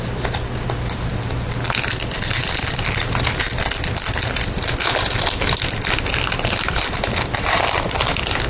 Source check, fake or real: real